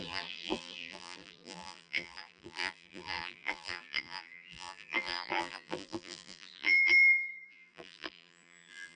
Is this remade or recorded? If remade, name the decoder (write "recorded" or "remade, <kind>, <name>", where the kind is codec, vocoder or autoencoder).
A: remade, vocoder, BigVGAN v2